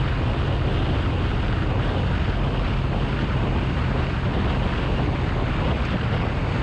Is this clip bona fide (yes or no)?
yes